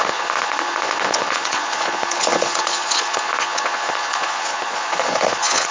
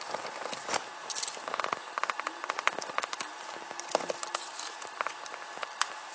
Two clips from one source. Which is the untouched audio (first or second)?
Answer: second